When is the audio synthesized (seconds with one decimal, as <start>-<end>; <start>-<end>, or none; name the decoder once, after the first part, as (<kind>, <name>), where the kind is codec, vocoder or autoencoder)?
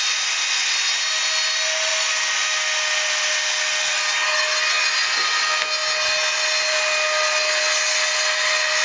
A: none